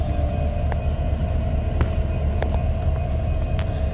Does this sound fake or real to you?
real